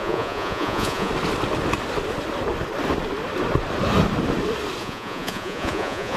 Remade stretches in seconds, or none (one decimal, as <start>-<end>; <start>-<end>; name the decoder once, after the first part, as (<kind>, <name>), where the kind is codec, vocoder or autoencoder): 0.0-1.1 (vocoder, Vocos); 4.8-6.2